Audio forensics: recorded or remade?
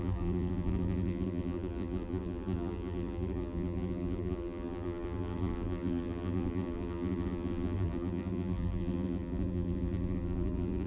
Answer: remade